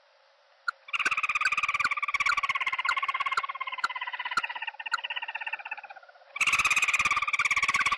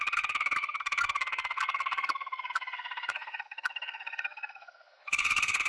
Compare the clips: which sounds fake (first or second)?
second